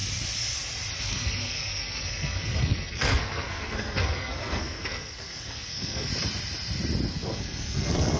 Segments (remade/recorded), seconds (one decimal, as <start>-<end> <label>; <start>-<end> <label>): 0.0-1.0 recorded; 1.0-6.1 remade; 6.1-7.1 recorded; 7.1-8.2 remade